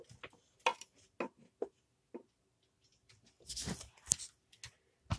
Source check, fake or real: real